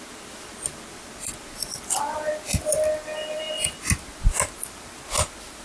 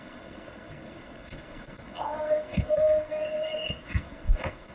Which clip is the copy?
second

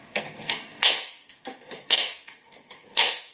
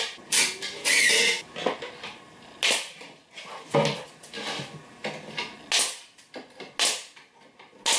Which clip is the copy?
first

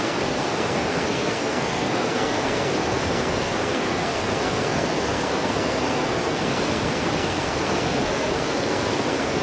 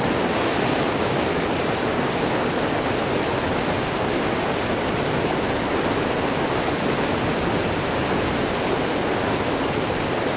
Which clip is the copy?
first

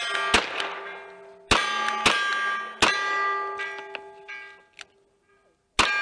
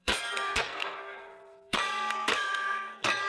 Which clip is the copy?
second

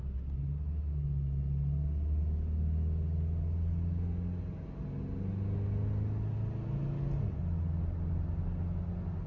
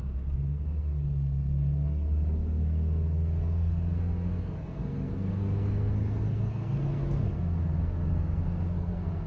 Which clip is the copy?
second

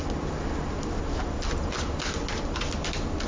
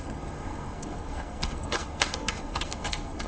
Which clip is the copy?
second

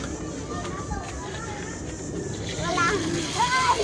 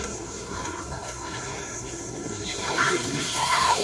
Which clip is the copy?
second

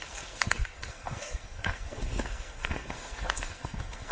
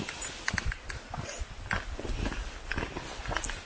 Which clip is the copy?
first